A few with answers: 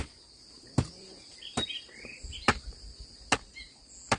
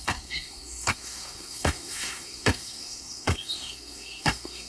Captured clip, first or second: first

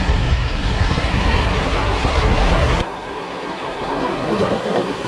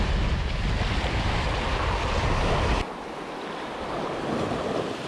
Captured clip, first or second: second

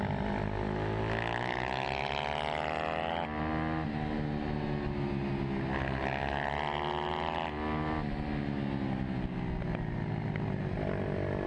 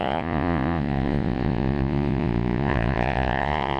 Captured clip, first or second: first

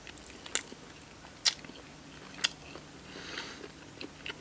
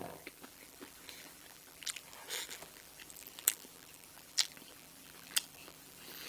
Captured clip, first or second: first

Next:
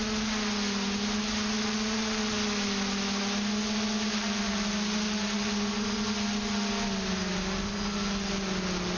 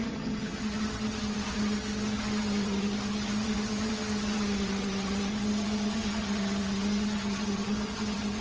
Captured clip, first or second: first